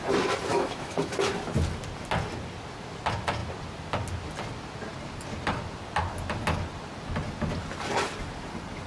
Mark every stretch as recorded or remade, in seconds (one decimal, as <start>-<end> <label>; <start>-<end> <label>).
0.0-0.5 recorded; 0.5-1.2 remade; 1.2-8.9 recorded

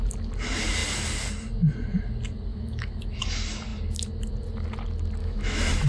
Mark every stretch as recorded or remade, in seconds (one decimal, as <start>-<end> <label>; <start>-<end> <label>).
0.0-2.5 recorded; 2.5-3.2 remade; 3.2-5.2 recorded; 5.2-5.9 remade

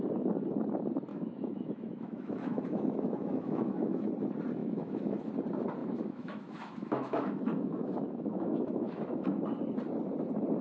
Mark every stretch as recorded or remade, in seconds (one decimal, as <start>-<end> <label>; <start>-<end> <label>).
0.0-1.1 recorded; 1.1-4.1 remade; 4.1-4.6 recorded; 4.6-5.3 remade; 5.3-5.8 recorded; 5.8-9.4 remade; 9.4-10.6 recorded

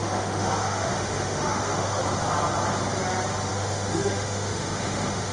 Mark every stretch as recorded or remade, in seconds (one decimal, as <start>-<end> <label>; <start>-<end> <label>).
0.0-2.0 remade; 2.0-3.5 recorded; 3.5-5.3 remade